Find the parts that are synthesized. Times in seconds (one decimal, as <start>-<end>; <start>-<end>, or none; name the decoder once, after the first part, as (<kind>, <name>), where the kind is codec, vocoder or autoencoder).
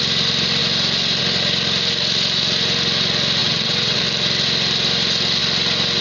3.4-4.0 (vocoder, WaveNeXt)